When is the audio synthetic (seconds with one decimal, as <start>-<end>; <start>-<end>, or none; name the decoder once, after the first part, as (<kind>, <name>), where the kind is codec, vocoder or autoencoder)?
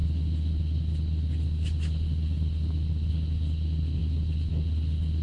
none